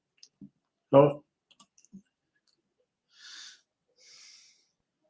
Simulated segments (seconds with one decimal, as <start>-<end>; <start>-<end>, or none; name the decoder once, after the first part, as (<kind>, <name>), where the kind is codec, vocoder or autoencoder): none

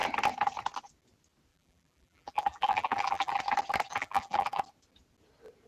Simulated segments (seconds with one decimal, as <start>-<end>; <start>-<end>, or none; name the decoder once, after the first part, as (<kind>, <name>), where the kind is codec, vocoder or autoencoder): 1.5-3.4 (vocoder, BigVGAN v2); 3.9-4.6

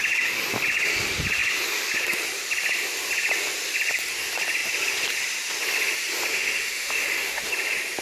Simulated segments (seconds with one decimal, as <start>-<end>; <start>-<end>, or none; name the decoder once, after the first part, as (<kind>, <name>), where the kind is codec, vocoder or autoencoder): 6.3-7.5 (autoencoder, DAC-VAE)

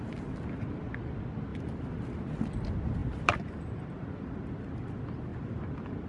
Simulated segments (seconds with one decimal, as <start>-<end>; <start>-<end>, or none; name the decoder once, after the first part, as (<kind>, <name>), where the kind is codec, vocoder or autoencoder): none

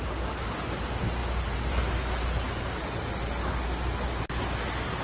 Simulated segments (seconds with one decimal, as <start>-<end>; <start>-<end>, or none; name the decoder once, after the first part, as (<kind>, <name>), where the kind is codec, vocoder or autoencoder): none

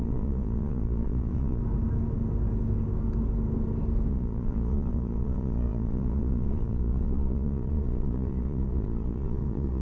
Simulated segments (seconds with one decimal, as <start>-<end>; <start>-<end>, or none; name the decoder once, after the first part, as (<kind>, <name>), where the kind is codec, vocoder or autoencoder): 0.0-1.6 (vocoder, Vocos); 4.1-9.8

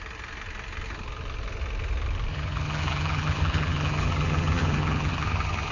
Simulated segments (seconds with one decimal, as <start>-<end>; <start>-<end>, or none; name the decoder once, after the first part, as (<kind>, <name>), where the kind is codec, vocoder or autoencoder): 2.3-5.7 (vocoder, HiFi-GAN)